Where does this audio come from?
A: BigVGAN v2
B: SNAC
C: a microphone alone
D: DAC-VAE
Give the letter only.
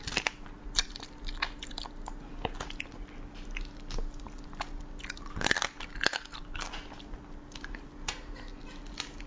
C